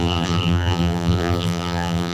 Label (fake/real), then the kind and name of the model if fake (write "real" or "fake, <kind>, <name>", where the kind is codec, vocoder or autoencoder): fake, vocoder, BigVGAN v2